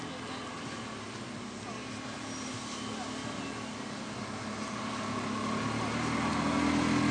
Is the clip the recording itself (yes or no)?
yes